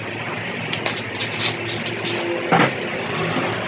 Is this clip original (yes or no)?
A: yes